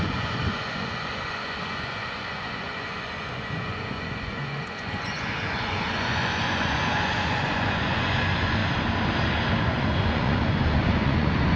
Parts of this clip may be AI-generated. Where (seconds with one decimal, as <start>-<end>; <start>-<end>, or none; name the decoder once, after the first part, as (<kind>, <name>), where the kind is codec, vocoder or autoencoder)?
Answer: 0.0-8.6 (vocoder, Vocos); 9.6-11.6